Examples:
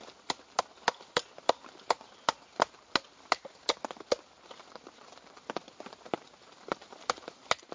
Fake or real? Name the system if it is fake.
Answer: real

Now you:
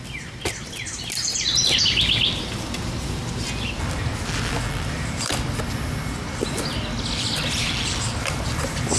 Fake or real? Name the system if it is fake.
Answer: real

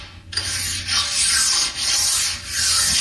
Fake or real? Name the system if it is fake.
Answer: real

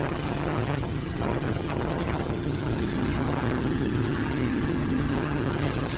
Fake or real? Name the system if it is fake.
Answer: fake, vocoder, HiFi-GAN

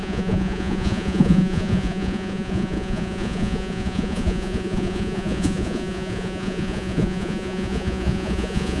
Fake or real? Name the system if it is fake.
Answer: fake, vocoder, Vocos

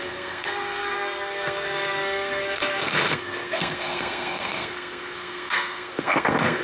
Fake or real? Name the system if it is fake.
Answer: fake, codec, SNAC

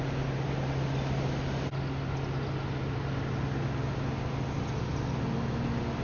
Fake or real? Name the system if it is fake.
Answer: real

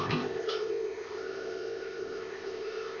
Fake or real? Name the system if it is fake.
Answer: fake, codec, ZipCodec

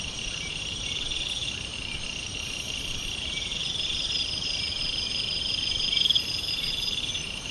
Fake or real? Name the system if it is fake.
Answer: fake, vocoder, BigVGAN v2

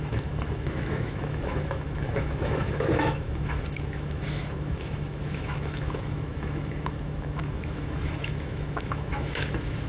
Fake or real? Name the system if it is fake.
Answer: fake, autoencoder, DAC-VAE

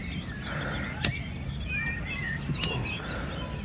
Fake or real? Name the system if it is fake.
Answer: real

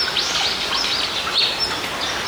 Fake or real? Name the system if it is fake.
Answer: real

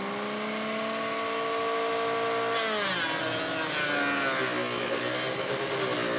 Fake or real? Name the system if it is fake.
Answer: real